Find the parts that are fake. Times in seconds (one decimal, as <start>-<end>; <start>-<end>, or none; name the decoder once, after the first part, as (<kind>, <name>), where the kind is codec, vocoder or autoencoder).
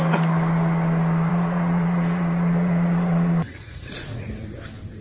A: 1.3-4.3 (vocoder, Vocos)